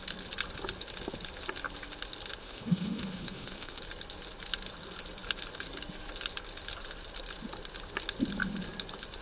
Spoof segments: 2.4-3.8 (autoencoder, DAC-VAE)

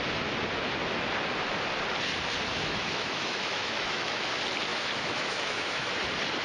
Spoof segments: 2.5-4.3 (autoencoder, DAC-VAE); 4.7-5.9

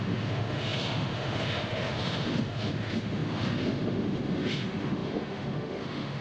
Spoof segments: 0.0-6.2 (autoencoder, DAC-VAE)